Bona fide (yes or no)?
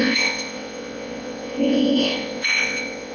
no